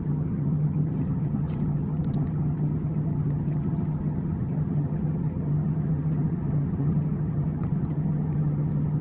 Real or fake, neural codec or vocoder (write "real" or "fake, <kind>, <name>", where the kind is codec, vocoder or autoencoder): fake, vocoder, HiFi-GAN